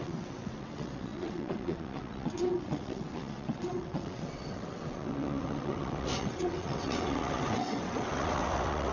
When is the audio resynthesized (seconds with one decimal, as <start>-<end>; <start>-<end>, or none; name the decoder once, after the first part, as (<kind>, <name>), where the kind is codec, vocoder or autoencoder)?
0.0-8.9 (vocoder, WaveNeXt)